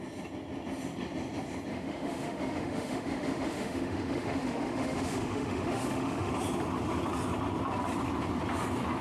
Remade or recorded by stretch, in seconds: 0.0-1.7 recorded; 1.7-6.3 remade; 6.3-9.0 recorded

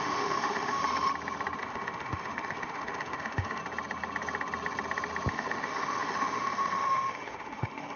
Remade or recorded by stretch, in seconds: 0.0-0.8 remade; 0.8-1.6 recorded; 1.6-3.6 remade; 3.6-5.3 recorded; 5.3-8.0 remade

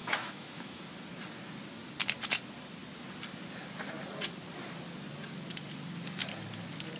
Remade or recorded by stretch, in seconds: 0.0-0.8 remade; 0.8-7.0 recorded

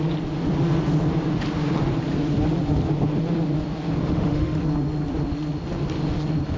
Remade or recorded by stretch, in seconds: 0.0-4.0 recorded; 4.0-4.6 remade; 4.6-6.6 recorded